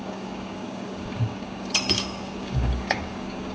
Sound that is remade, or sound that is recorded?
remade